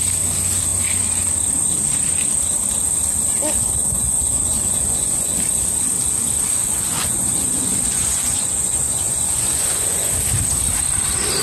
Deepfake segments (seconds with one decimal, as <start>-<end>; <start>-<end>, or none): 3.8-5.3; 6.6-10.2